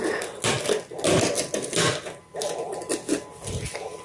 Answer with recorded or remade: recorded